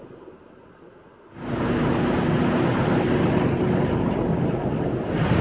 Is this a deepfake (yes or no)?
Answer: no